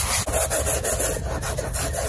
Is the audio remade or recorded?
recorded